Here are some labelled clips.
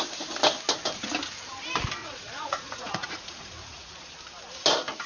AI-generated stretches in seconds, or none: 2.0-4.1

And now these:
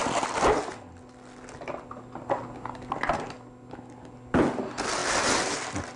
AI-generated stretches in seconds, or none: none

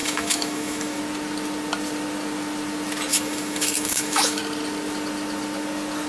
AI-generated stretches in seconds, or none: 0.0-1.0; 3.1-4.4